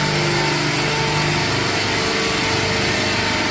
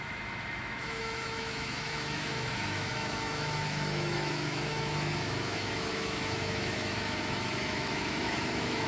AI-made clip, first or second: second